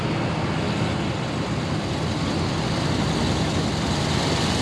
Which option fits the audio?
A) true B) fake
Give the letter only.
A